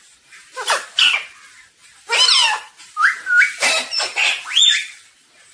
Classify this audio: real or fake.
real